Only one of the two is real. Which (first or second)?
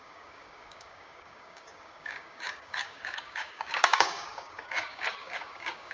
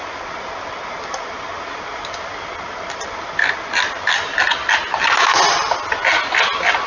second